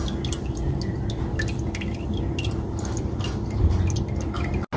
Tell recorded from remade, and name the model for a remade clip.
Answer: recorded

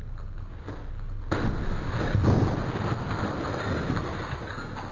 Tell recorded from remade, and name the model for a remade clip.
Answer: recorded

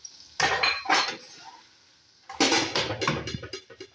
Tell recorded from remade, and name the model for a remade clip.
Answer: recorded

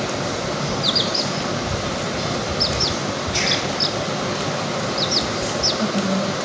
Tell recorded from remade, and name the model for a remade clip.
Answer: recorded